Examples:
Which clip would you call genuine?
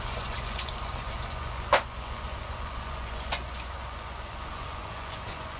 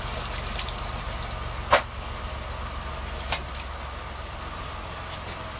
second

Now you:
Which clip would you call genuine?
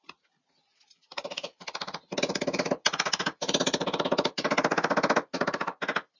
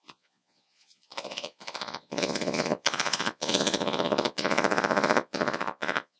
first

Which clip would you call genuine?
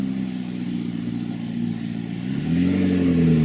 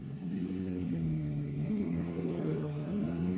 first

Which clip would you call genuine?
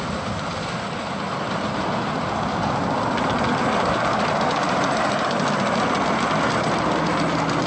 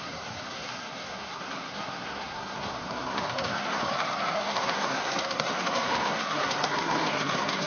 first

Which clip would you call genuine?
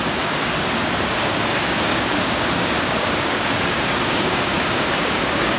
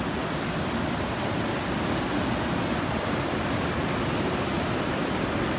second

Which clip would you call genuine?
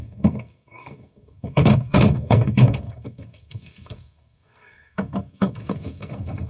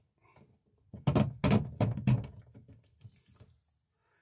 second